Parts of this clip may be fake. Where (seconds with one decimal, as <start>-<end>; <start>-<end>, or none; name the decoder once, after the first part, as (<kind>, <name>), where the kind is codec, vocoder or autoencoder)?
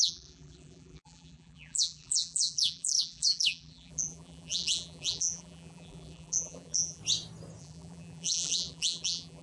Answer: 0.0-7.0 (vocoder, BigVGAN v2); 7.6-9.4